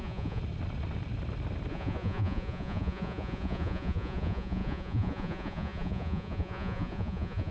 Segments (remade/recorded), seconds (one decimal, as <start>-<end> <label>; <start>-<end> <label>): 0.0-0.4 remade; 0.4-1.7 recorded; 1.7-7.5 remade